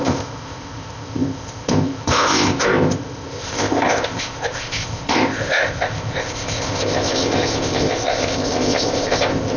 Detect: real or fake fake